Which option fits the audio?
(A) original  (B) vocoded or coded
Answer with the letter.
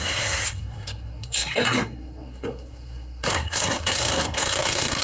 B